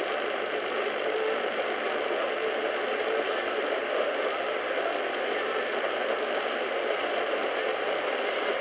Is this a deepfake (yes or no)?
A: no